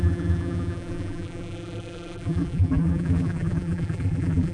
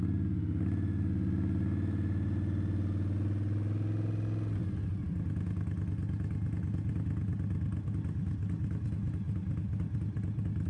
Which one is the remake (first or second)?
first